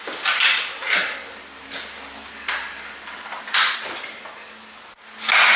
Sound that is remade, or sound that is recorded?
recorded